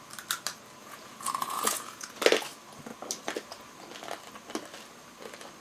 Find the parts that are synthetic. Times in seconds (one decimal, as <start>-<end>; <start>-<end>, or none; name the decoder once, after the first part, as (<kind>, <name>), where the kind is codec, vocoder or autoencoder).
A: 0.8-2.2 (vocoder, Vocos)